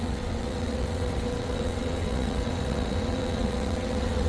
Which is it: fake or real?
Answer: fake